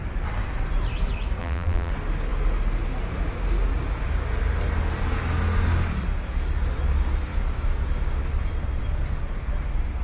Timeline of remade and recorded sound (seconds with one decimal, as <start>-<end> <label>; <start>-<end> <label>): 0.0-1.4 recorded; 1.4-1.9 remade; 1.9-10.0 recorded